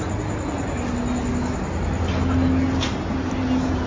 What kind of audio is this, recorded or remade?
recorded